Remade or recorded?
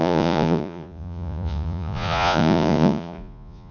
remade